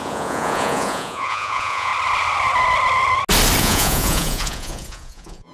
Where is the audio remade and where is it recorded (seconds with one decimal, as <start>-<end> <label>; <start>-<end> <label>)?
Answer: 0.0-1.9 remade; 1.9-3.6 recorded; 3.6-5.5 remade